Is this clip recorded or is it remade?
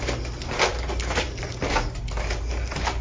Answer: recorded